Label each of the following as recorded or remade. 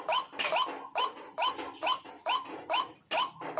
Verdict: recorded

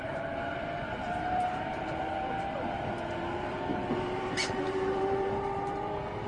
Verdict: remade